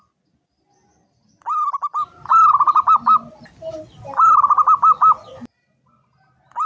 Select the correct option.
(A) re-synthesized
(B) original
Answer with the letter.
B